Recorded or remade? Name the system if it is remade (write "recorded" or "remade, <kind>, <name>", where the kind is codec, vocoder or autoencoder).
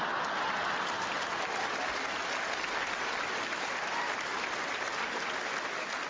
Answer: recorded